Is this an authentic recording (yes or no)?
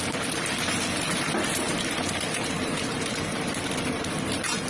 yes